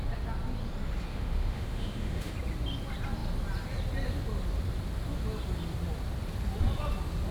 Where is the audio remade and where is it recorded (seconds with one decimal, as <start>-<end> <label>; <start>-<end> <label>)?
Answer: 0.0-1.1 recorded; 1.1-2.3 remade; 2.3-7.3 recorded